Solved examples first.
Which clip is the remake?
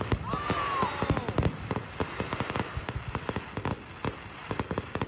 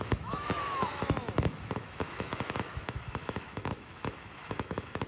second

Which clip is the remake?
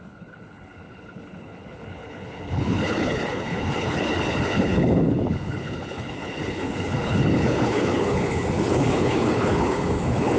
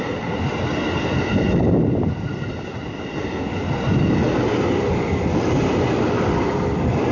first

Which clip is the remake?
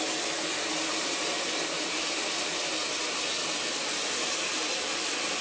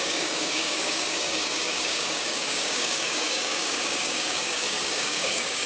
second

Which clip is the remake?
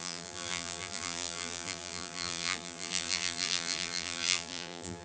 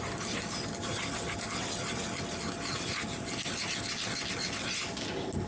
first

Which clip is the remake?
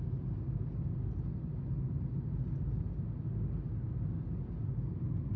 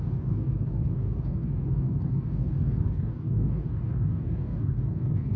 second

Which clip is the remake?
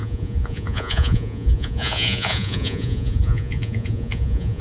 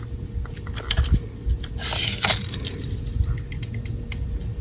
first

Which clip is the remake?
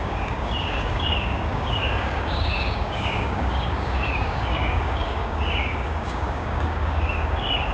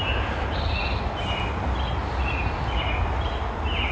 first